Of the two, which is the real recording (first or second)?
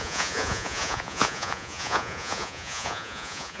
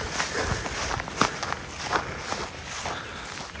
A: second